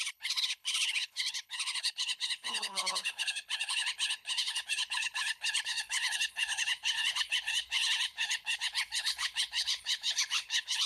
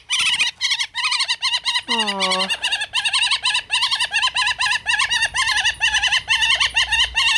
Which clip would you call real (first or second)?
second